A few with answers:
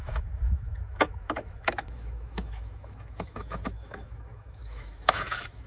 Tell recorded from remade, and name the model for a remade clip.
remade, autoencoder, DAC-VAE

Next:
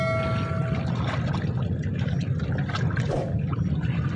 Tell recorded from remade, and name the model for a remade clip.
recorded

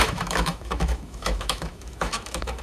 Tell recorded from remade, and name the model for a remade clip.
remade, autoencoder, DAC-VAE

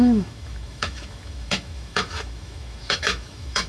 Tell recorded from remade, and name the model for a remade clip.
remade, autoencoder, DAC-VAE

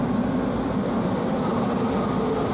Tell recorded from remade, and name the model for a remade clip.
recorded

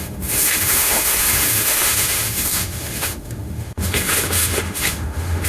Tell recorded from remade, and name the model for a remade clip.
remade, autoencoder, DAC-VAE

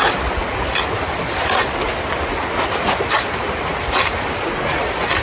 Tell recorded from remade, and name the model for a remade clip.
recorded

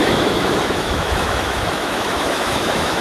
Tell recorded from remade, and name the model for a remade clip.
remade, autoencoder, DAC-VAE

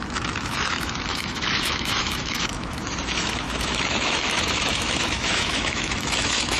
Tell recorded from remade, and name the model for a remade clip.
remade, autoencoder, DAC-VAE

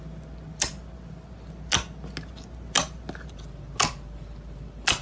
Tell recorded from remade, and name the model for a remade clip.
recorded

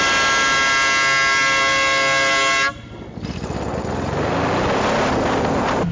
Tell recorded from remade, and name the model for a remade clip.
recorded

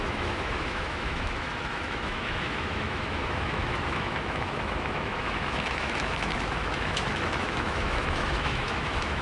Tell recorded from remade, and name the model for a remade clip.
remade, autoencoder, DAC-VAE